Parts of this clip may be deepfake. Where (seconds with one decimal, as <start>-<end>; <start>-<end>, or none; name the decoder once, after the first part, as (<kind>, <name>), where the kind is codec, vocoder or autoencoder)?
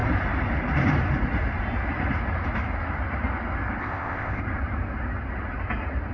3.8-4.4 (codec, ZipCodec)